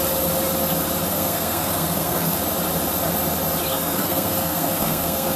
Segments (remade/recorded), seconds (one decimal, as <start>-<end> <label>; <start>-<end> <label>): 0.0-1.1 recorded; 1.1-2.4 remade; 2.4-3.7 recorded; 3.7-5.4 remade